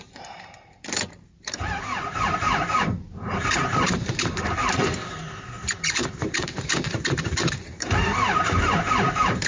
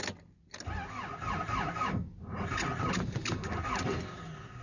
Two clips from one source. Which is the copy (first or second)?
first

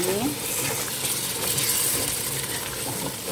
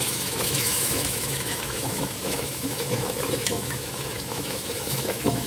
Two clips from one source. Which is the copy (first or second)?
second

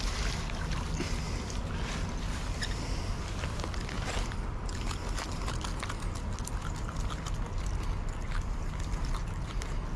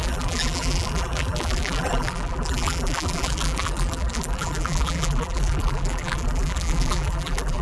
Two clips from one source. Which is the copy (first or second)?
second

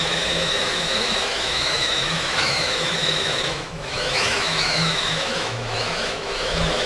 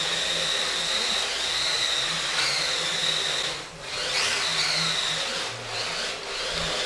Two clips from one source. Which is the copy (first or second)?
first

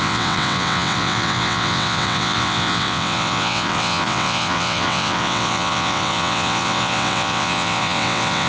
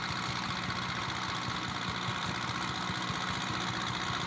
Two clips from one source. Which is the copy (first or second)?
first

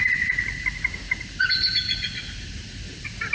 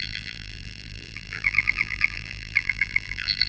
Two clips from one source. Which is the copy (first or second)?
second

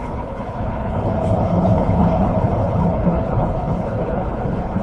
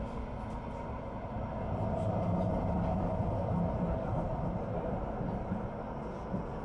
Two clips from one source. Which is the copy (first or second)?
first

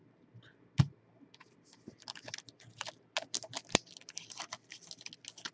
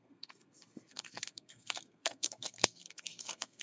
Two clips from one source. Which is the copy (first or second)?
second